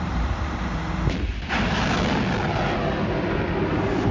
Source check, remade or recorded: recorded